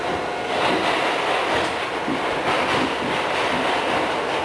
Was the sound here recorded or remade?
recorded